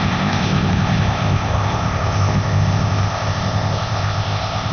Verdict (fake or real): fake